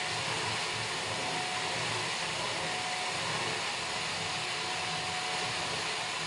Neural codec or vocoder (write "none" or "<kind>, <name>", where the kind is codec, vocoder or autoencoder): none